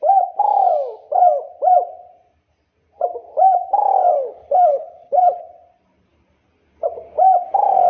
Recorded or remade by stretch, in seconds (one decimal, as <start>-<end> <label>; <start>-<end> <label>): 0.0-4.2 recorded; 4.2-5.4 remade; 5.4-7.9 recorded